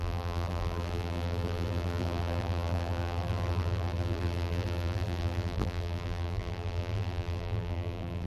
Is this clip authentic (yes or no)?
no